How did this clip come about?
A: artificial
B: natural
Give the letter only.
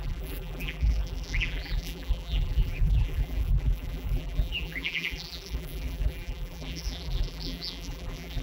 A